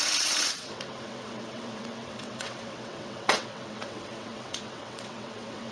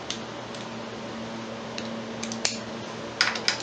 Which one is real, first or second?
second